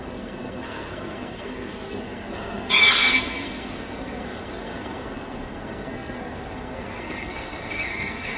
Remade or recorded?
remade